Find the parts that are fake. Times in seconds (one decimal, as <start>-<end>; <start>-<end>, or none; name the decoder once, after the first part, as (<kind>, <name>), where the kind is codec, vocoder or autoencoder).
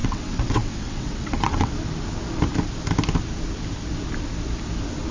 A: 0.0-1.7 (vocoder, WaveNeXt)